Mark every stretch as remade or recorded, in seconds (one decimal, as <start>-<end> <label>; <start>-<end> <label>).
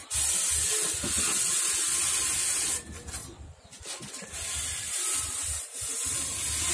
0.0-3.2 recorded; 3.2-3.8 remade; 3.8-6.7 recorded